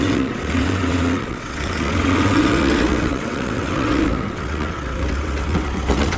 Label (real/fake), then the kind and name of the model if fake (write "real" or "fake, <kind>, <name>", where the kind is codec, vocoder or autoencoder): fake, vocoder, WaveNeXt